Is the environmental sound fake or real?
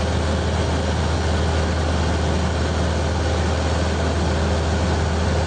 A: real